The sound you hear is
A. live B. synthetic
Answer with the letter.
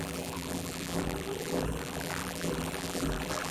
B